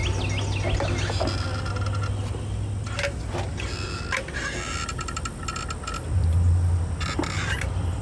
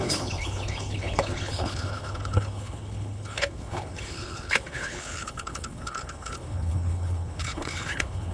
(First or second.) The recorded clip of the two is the first